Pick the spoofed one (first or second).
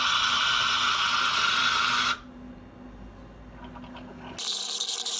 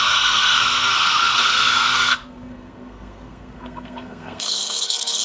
second